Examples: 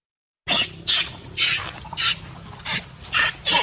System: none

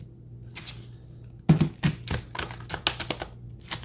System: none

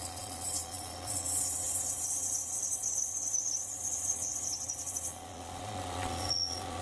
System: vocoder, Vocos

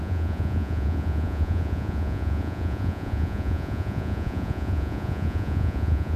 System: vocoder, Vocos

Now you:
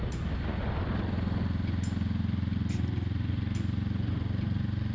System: none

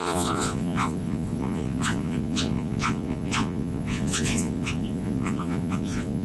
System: vocoder, Vocos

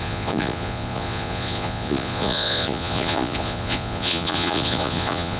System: vocoder, Vocos